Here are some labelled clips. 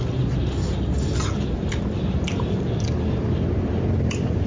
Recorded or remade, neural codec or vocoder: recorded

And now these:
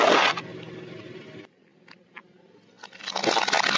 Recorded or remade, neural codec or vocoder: recorded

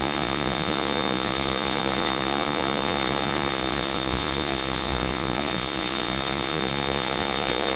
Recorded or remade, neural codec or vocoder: remade, vocoder, Vocos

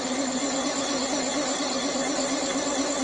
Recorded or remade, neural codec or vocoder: recorded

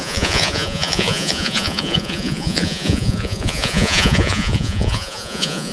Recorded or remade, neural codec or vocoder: remade, vocoder, Vocos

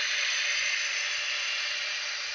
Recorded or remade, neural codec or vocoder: recorded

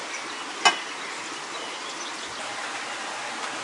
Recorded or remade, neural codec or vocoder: recorded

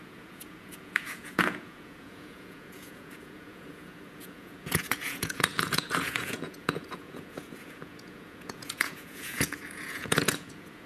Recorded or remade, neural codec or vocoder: remade, vocoder, Vocos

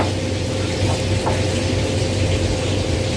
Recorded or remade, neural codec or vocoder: recorded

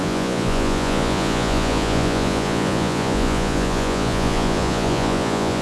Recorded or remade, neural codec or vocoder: remade, vocoder, Vocos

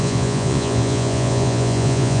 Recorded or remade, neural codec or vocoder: remade, vocoder, Vocos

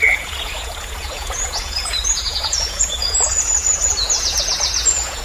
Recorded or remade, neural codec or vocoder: remade, vocoder, Vocos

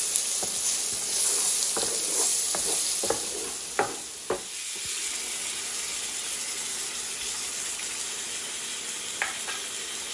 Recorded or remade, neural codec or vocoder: recorded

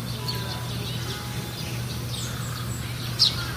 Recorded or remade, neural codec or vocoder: recorded